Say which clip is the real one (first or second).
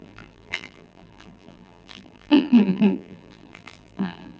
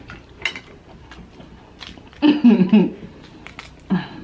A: second